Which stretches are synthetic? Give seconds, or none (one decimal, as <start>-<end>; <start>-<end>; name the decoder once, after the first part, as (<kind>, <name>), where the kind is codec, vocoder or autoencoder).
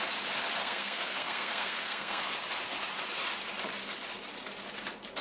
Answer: 0.6-2.3 (codec, SNAC)